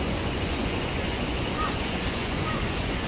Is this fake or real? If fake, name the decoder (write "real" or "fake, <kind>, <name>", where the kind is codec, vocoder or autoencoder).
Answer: fake, vocoder, Vocos